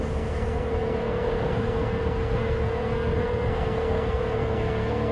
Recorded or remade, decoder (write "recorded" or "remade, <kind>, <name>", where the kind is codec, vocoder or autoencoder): remade, codec, SNAC